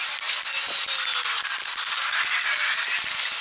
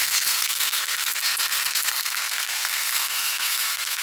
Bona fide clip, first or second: first